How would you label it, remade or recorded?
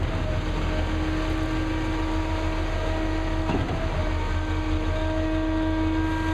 recorded